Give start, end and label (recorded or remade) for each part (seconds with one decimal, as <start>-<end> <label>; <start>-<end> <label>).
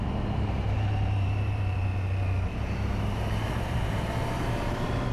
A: 0.0-1.9 remade; 1.9-2.5 recorded; 2.5-5.1 remade